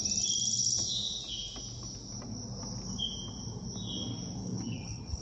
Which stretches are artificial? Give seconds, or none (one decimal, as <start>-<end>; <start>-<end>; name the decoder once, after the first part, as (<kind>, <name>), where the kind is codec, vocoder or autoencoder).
4.4-5.2 (codec, HILCodec)